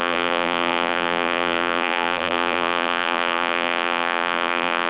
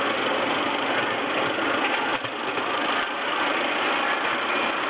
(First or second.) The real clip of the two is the second